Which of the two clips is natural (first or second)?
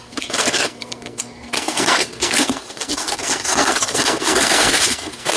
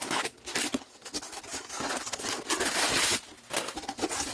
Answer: second